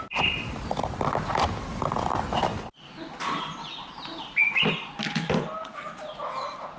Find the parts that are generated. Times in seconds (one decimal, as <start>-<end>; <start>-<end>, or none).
none